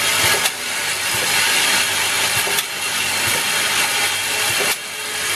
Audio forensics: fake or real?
real